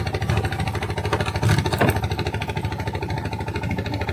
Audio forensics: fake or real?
real